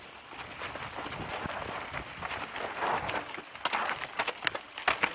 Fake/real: real